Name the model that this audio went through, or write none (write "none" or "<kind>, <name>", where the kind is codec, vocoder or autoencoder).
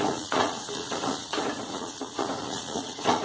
vocoder, Vocos